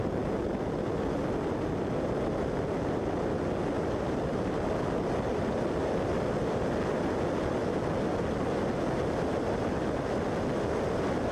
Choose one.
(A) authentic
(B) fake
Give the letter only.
A